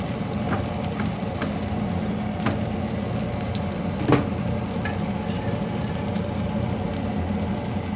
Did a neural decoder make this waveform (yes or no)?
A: no